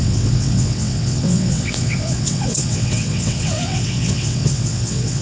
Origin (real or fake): fake